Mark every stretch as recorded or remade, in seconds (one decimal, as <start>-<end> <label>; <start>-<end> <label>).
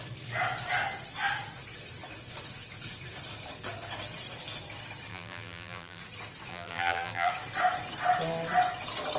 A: 0.0-5.1 recorded; 5.1-6.0 remade; 6.0-6.5 recorded; 6.5-7.3 remade; 7.3-9.2 recorded